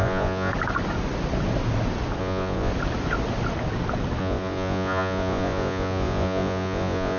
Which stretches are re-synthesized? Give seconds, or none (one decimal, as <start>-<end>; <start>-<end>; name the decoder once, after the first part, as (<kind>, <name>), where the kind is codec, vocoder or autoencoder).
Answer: 0.0-0.5 (vocoder, Vocos); 2.2-2.7; 4.2-7.2